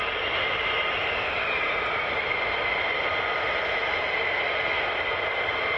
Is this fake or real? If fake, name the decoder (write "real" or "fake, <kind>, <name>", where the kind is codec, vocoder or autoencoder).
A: real